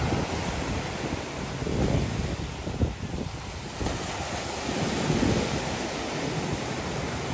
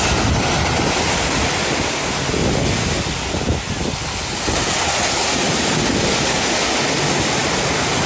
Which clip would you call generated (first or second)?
first